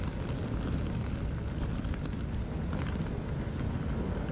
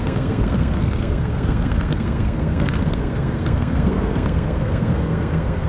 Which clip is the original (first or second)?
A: first